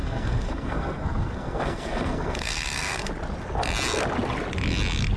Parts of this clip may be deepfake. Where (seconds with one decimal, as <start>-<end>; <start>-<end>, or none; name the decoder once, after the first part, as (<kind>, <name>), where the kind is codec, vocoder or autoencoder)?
0.0-3.1 (codec, SNAC)